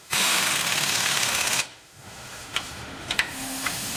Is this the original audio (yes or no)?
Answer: no